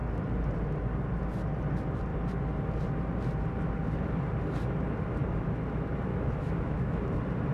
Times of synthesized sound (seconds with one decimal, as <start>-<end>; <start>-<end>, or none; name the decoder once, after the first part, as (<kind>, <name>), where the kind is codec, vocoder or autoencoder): 6.1-7.0 (autoencoder, DAC-VAE)